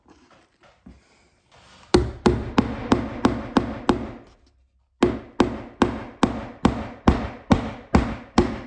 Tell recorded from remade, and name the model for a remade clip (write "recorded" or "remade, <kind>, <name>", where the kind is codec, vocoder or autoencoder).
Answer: recorded